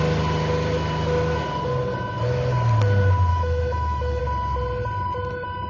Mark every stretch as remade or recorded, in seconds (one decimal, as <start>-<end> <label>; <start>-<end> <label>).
0.0-3.3 recorded; 3.3-4.2 remade; 4.2-5.7 recorded